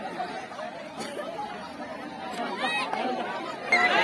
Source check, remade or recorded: recorded